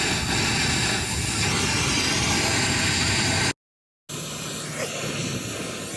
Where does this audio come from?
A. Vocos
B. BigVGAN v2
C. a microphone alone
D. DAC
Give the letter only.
C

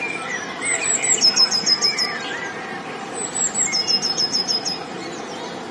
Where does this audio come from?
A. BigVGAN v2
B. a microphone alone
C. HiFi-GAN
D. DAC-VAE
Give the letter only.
A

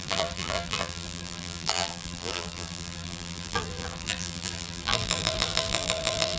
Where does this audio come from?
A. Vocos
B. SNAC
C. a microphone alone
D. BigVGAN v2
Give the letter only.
D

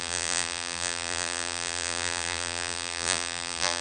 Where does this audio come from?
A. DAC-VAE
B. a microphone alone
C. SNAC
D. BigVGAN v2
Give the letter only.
D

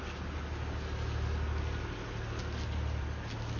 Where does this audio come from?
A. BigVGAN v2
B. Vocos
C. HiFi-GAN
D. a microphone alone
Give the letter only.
D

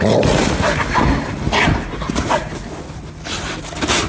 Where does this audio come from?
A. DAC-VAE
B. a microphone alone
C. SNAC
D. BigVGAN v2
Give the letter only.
B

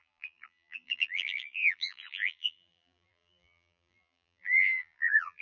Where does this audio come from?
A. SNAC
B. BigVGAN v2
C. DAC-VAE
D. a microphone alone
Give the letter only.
B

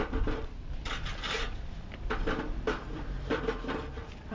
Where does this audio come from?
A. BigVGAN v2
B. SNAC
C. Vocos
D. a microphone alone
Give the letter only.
A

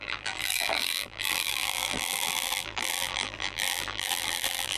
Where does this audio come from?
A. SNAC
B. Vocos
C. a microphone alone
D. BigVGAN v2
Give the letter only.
D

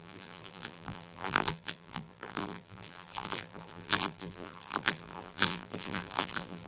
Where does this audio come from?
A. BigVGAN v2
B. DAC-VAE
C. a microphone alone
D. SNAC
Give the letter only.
A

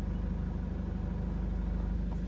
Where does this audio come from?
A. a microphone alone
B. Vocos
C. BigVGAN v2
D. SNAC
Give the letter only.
A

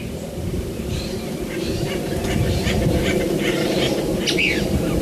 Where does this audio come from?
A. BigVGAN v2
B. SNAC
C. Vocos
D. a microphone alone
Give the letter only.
A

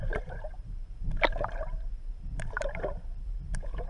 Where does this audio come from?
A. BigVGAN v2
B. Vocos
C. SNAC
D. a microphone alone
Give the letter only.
A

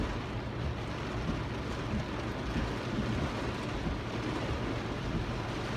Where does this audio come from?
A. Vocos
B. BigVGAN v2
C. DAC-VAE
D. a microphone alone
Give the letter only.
D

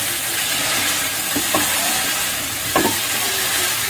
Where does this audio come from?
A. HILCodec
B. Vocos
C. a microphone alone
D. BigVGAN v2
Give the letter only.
C